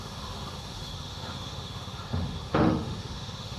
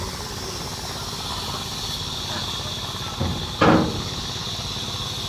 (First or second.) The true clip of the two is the second